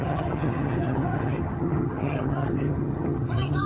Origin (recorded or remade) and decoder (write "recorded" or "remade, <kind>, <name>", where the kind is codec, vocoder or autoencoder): remade, vocoder, HiFi-GAN